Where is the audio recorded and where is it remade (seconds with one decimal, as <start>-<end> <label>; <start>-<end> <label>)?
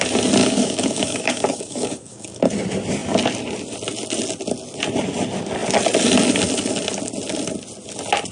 0.0-0.4 recorded; 0.4-2.4 remade; 2.4-8.3 recorded